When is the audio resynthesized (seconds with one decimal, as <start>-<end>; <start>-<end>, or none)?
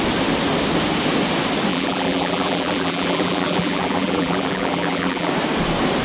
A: 1.7-5.3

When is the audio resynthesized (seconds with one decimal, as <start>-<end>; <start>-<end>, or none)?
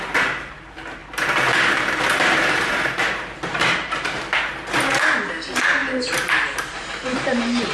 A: 1.0-4.9; 5.8-7.7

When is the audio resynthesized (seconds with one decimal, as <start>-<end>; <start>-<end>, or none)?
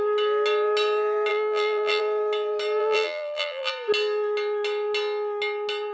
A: 1.3-2.0; 2.8-3.7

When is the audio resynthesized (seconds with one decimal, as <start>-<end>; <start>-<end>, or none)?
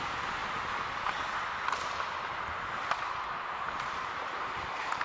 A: 0.0-0.4; 3.4-5.0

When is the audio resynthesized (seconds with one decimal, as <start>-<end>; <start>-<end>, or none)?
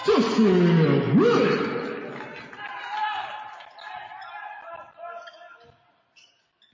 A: none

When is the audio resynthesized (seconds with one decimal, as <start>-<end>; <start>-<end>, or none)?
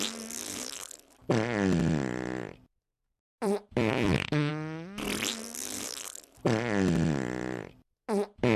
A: 2.7-4.5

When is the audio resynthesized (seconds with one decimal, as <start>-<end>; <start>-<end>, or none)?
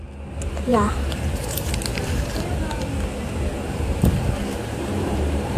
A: 0.7-2.4; 3.5-5.6